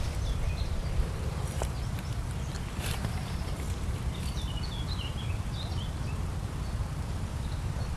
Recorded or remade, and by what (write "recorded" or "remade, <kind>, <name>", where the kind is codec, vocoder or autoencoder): remade, vocoder, BigVGAN v2